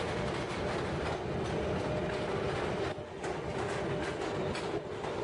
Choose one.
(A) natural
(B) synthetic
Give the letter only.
A